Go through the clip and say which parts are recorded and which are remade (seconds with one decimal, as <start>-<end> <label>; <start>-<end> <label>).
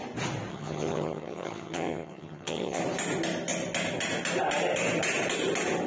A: 0.0-0.5 recorded; 0.5-2.8 remade; 2.8-5.9 recorded